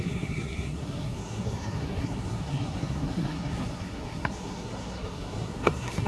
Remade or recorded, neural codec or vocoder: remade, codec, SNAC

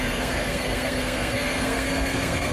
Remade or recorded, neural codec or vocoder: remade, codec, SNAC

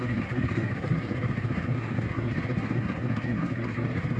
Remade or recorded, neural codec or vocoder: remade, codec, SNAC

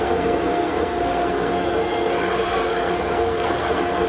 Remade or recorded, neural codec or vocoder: remade, codec, SNAC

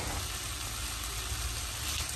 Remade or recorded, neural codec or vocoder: recorded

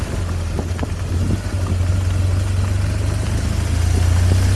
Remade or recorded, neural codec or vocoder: recorded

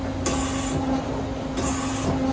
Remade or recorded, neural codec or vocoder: recorded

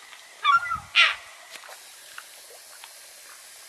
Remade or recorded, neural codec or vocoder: recorded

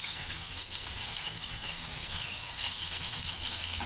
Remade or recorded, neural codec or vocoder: remade, codec, SNAC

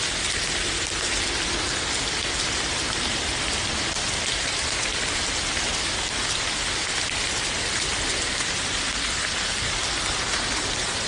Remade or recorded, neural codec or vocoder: recorded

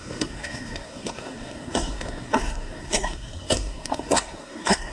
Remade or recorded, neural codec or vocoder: remade, codec, SNAC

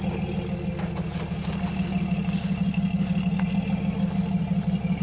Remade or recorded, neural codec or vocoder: recorded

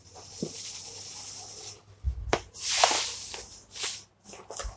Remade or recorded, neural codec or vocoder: recorded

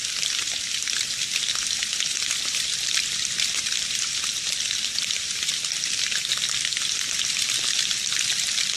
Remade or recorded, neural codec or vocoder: recorded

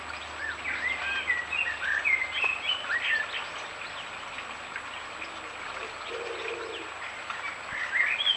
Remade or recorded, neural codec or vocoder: recorded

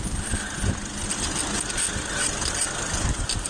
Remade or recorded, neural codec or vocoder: recorded